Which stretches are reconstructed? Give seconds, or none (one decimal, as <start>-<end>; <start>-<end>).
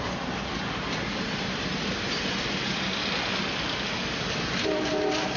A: 0.0-3.0; 4.4-5.4